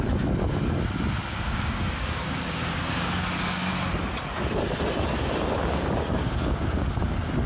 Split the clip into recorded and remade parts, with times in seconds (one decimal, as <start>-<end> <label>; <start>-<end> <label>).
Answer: 0.0-1.3 recorded; 1.3-3.7 remade; 3.7-5.7 recorded; 5.7-6.9 remade; 6.9-7.5 recorded